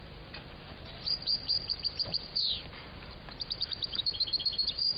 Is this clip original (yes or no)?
no